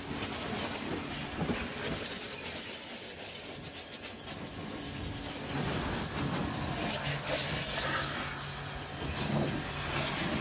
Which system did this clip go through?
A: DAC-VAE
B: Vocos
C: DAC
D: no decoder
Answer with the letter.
D